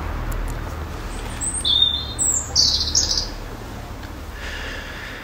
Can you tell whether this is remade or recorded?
recorded